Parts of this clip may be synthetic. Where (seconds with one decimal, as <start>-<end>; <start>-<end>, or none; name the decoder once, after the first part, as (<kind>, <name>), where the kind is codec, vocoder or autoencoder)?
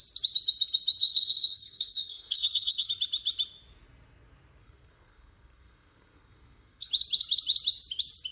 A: 1.0-2.9 (codec, SNAC); 4.6-6.9